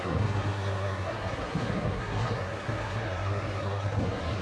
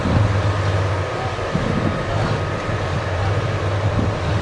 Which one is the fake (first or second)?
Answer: first